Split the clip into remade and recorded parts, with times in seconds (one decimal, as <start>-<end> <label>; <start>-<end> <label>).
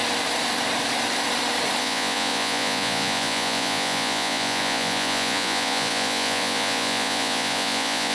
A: 0.0-1.8 recorded; 1.8-8.1 remade